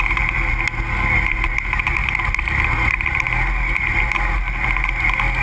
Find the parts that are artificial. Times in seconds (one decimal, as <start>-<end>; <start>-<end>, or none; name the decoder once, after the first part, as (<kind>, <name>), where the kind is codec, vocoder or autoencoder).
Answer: none